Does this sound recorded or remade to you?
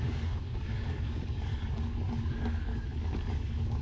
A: remade